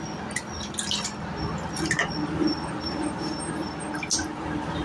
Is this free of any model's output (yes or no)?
yes